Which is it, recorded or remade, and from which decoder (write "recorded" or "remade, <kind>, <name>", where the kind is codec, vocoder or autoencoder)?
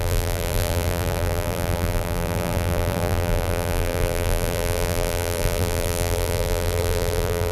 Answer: remade, vocoder, BigVGAN v2